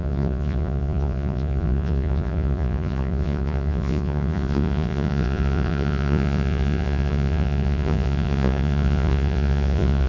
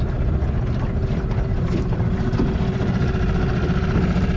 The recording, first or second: second